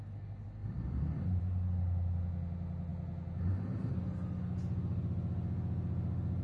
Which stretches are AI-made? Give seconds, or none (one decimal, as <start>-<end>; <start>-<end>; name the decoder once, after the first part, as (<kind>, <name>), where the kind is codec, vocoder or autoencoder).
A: 0.6-1.4 (vocoder, BigVGAN v2)